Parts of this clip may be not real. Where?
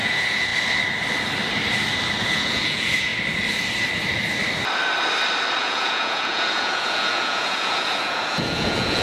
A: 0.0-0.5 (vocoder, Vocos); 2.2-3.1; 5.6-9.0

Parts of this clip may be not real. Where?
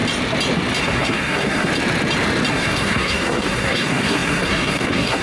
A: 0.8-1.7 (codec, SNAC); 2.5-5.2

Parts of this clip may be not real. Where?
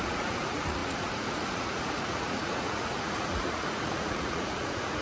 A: 0.0-5.0 (vocoder, Vocos)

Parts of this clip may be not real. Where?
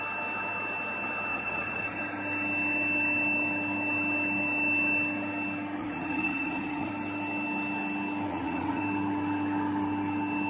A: 1.3-2.0 (vocoder, Vocos); 5.8-6.9; 8.3-8.8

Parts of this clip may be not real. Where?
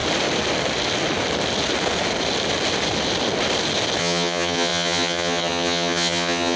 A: 4.0-6.6 (vocoder, HiFi-GAN)